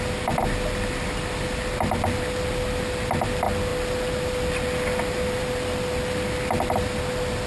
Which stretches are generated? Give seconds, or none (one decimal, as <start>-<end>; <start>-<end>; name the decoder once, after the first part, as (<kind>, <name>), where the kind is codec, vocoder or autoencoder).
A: none

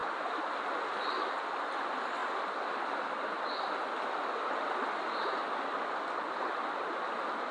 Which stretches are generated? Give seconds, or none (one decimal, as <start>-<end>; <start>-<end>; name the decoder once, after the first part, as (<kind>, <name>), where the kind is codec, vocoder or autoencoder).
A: none